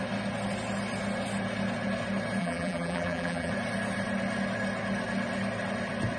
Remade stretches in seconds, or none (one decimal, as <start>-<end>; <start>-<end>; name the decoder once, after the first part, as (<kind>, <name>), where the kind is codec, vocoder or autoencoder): 2.4-3.5 (vocoder, BigVGAN v2)